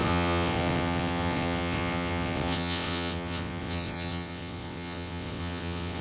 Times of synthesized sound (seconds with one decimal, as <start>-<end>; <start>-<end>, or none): 0.0-6.0